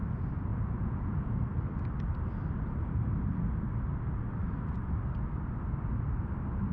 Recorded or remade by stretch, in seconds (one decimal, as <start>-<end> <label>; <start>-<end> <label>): 0.0-0.5 recorded; 0.5-1.4 remade; 1.4-6.7 recorded